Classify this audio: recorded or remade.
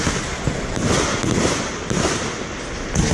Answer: recorded